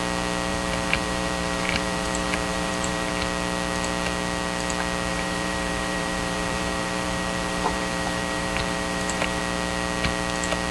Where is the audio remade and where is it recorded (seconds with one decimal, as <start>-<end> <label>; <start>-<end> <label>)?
0.0-0.5 recorded; 0.5-3.1 remade; 3.1-5.1 recorded; 5.1-9.4 remade; 9.4-10.7 recorded